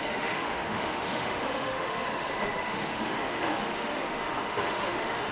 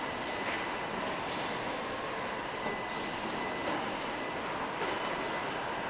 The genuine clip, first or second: second